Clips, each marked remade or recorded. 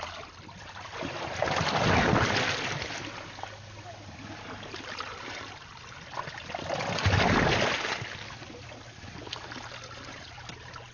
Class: recorded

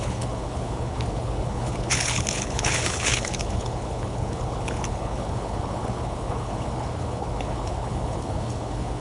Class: remade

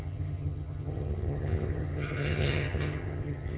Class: remade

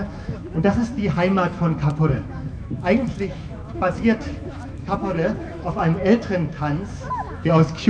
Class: remade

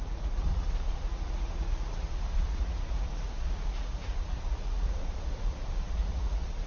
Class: remade